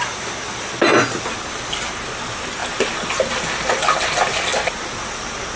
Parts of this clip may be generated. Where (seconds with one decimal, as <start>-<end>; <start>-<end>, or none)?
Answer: none